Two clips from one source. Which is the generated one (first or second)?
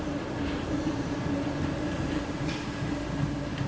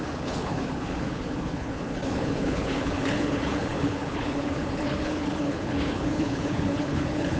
second